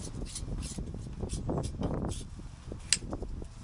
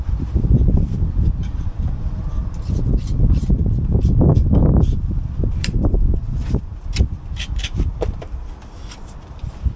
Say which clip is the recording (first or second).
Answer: first